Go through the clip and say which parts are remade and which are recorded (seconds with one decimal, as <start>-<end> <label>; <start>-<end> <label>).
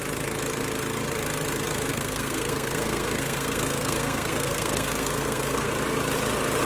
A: 0.0-1.9 recorded; 1.9-5.7 remade; 5.7-6.7 recorded